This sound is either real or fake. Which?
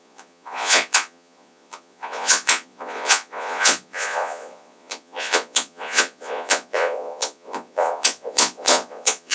fake